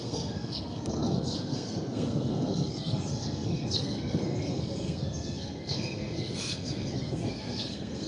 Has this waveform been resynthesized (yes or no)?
yes